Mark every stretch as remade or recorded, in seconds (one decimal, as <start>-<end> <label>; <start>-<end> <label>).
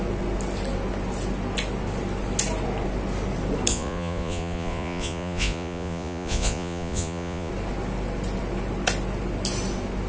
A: 0.0-3.7 recorded; 3.7-7.5 remade; 7.5-10.1 recorded